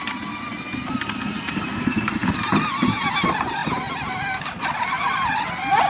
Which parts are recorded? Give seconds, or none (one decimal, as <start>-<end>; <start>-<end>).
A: 0.0-5.9